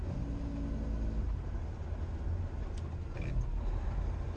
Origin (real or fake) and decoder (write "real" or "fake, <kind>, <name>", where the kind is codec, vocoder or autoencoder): real